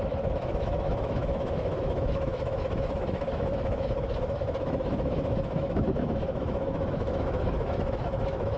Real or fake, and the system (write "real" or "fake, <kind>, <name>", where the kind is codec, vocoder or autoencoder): fake, autoencoder, DAC-VAE